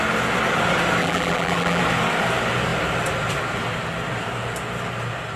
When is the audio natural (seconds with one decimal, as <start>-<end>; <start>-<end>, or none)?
0.0-1.0; 1.8-5.4